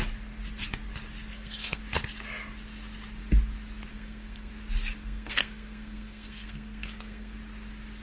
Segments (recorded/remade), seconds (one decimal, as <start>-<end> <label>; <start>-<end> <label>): 0.0-1.3 recorded; 1.3-1.8 remade; 1.8-3.9 recorded; 3.9-4.5 remade; 4.5-5.0 recorded; 5.0-7.4 remade; 7.4-8.0 recorded